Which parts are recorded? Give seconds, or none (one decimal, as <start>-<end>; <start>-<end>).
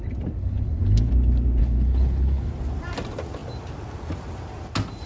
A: 0.0-0.4; 1.1-1.6; 2.5-5.1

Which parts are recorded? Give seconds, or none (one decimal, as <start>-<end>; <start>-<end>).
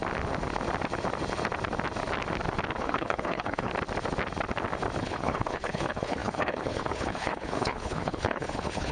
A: 0.0-2.8; 3.7-5.0